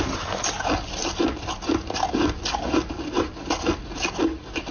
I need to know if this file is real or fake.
real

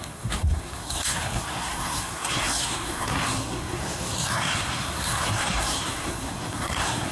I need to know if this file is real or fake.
fake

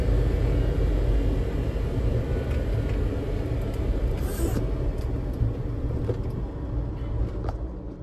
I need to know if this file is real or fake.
real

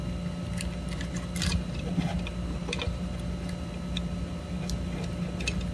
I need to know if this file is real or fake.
real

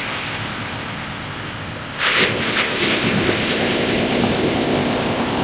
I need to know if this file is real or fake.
fake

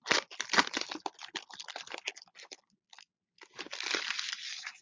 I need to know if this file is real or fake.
real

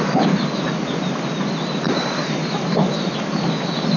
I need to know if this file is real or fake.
real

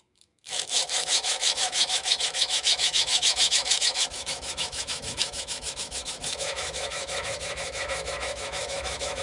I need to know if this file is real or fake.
fake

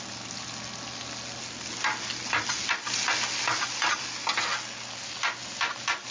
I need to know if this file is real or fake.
real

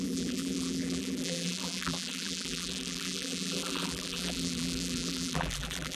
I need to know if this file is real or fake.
fake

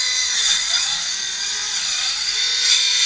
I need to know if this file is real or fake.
fake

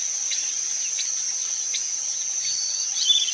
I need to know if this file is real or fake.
real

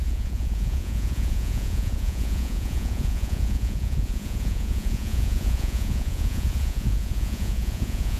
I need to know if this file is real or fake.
fake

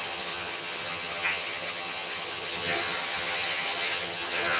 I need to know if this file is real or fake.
fake